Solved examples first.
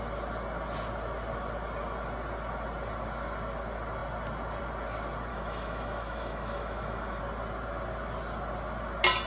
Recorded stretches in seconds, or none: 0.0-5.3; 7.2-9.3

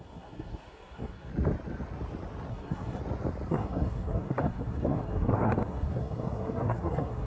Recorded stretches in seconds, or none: 1.3-2.5; 3.0-3.5

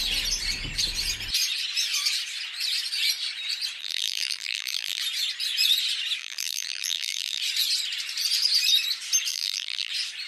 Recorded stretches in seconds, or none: 0.0-3.8; 5.0-6.2; 7.4-9.3; 9.9-10.3

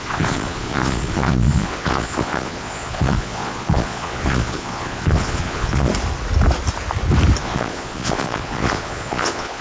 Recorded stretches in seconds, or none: 5.9-7.4

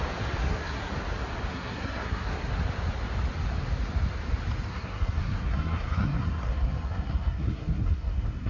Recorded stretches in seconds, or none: 0.0-0.4; 0.9-1.5; 2.5-4.7

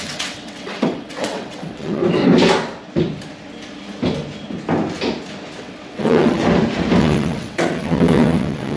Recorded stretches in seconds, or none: 2.0-5.6; 6.4-7.0